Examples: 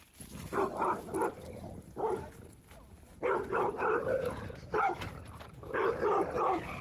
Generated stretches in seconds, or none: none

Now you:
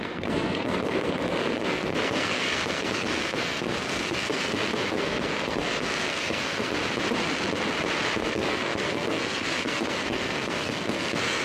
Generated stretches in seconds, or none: 0.0-6.7 (codec, SNAC); 8.2-11.4

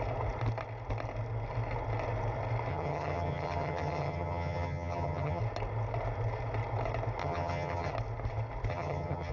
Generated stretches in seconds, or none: 2.7-5.4 (vocoder, HiFi-GAN); 7.2-7.9; 8.7-9.3

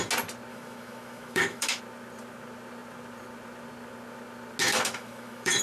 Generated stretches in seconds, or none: 0.5-1.8 (autoencoder, DAC-VAE); 4.6-5.6

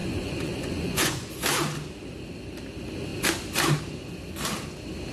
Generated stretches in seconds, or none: 0.0-1.3 (vocoder, Vocos)

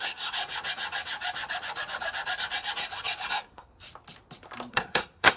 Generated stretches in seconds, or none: 0.0-0.4 (codec, SNAC); 3.3-3.7; 4.7-5.4

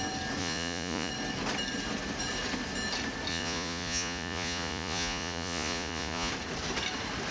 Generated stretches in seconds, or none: 0.4-1.1 (vocoder, Vocos); 3.3-6.3